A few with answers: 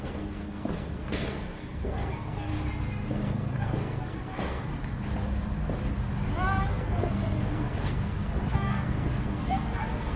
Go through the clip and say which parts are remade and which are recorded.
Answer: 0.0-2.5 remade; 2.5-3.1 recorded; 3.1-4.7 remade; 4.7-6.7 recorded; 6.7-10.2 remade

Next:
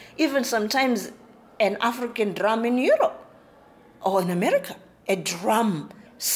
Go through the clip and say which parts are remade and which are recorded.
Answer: 0.0-6.4 recorded

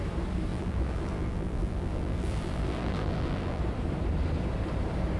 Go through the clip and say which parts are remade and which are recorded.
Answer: 0.0-0.5 recorded; 0.5-3.6 remade; 3.6-5.2 recorded

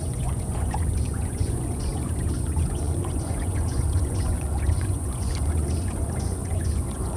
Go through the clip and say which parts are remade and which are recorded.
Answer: 0.0-7.2 remade

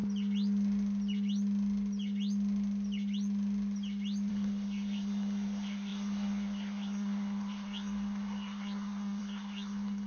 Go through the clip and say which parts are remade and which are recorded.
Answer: 0.0-4.3 recorded; 4.3-10.1 remade

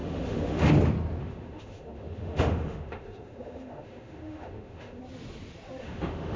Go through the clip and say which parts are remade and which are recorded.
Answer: 0.0-0.7 remade; 0.7-1.2 recorded; 1.2-5.0 remade; 5.0-5.8 recorded; 5.8-6.4 remade

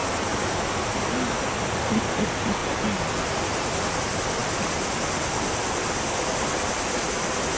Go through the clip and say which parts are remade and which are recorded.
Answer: 0.0-7.6 recorded